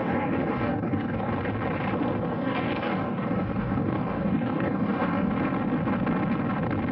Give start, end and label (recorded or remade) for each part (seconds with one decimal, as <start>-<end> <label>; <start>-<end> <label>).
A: 0.0-1.3 remade; 1.3-2.3 recorded; 2.3-5.3 remade; 5.3-6.9 recorded